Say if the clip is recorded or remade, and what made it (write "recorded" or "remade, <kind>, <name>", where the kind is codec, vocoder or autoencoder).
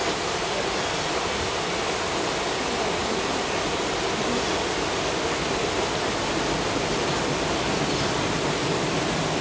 recorded